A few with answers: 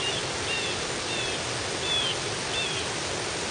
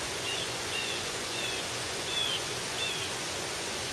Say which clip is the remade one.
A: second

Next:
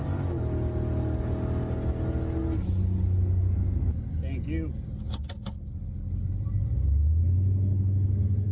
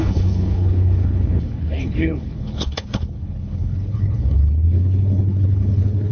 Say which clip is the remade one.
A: second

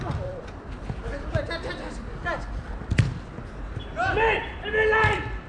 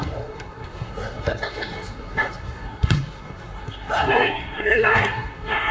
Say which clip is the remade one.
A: second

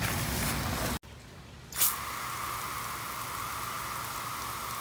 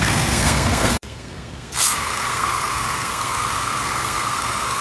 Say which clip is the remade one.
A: second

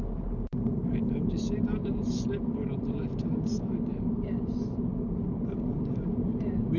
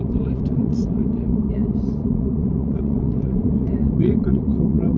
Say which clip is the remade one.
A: second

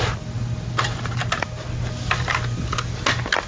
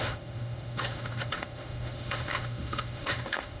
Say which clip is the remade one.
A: second